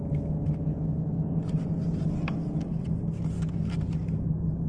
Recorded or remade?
recorded